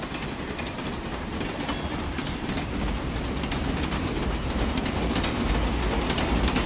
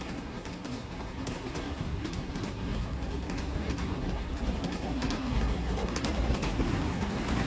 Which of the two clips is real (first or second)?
first